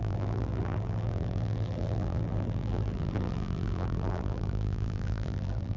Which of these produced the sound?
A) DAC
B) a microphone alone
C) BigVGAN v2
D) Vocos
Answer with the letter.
C